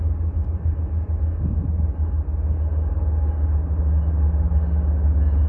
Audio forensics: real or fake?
real